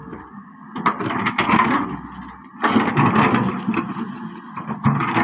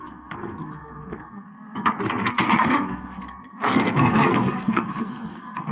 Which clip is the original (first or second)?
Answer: first